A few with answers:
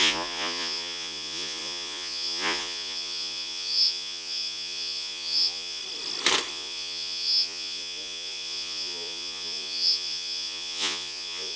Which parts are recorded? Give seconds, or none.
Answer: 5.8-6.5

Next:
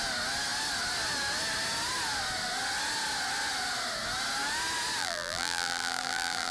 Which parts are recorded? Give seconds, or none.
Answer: 0.0-5.0

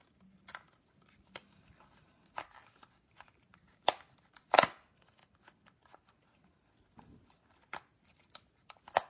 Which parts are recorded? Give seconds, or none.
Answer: 0.0-9.1

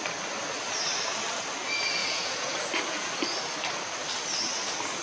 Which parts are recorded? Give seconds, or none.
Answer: 0.0-2.0; 3.1-5.0

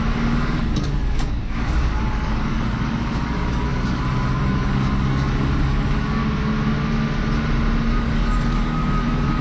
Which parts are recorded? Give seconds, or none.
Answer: 6.2-8.0

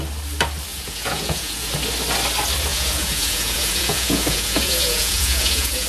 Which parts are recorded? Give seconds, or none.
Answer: 0.0-0.7; 1.7-2.7

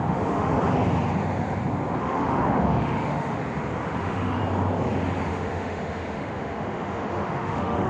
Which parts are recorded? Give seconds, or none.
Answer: 0.6-2.0; 3.4-4.0; 4.4-5.3

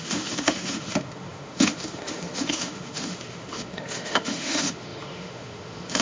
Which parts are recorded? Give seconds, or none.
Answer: none